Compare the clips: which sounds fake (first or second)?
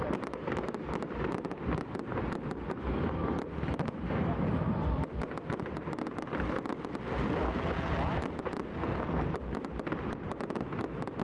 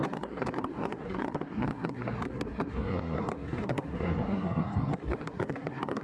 second